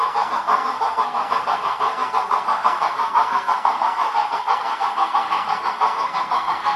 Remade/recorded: remade